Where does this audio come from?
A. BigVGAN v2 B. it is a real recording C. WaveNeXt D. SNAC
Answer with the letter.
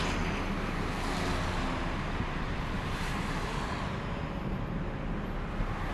B